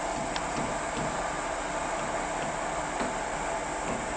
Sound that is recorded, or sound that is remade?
recorded